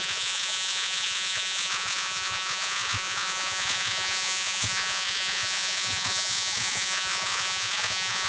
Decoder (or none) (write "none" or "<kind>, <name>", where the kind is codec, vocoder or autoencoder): vocoder, Vocos